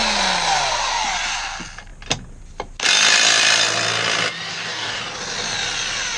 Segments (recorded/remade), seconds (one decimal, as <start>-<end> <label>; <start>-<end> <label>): 0.0-4.5 recorded; 4.5-5.0 remade; 5.0-6.2 recorded